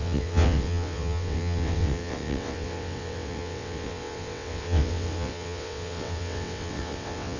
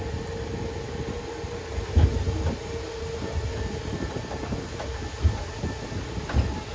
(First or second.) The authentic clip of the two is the second